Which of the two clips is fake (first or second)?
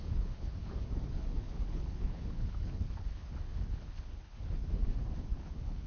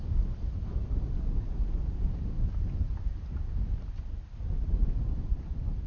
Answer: first